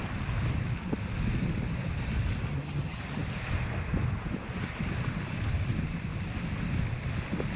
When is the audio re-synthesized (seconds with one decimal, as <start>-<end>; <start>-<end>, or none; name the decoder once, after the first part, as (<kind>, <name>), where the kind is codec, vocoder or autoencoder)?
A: 2.5-3.2 (vocoder, HiFi-GAN)